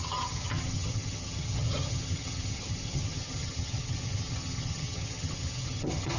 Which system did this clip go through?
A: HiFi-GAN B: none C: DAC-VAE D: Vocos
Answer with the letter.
A